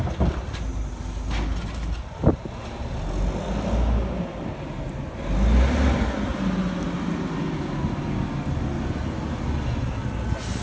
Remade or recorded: recorded